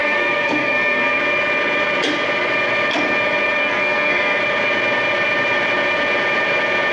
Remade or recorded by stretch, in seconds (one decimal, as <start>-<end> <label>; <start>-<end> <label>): 0.0-1.2 remade; 1.2-3.6 recorded; 3.6-4.4 remade; 4.4-6.9 recorded